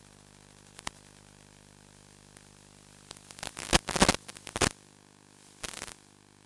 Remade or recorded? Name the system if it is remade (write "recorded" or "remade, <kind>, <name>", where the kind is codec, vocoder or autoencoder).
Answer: recorded